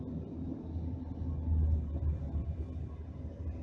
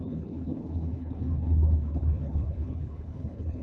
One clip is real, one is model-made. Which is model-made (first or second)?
second